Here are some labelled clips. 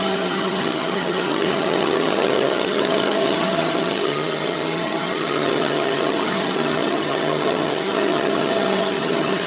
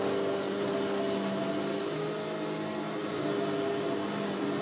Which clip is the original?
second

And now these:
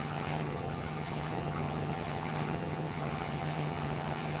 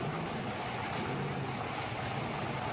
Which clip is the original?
second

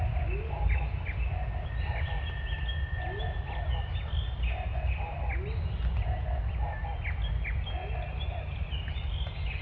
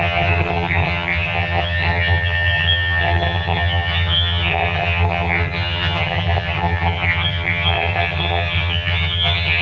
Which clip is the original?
first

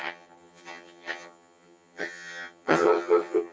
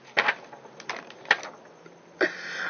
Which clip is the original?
second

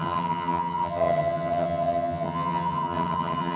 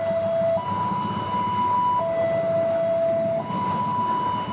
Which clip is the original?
second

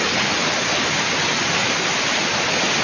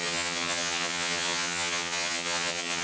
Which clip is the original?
first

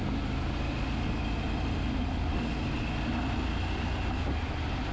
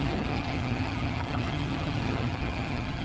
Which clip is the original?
first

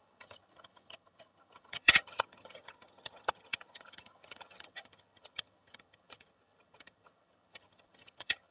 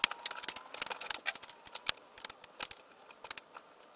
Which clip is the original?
second